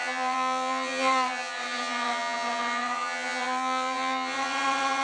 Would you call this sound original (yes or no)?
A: no